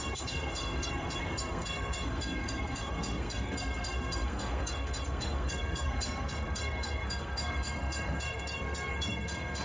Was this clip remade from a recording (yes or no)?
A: yes